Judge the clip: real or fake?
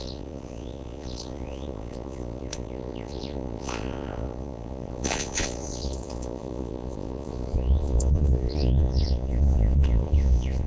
fake